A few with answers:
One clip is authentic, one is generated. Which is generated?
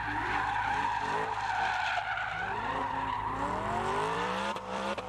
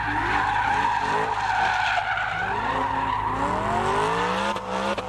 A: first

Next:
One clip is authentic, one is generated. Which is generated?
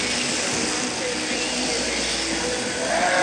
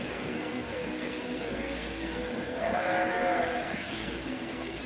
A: second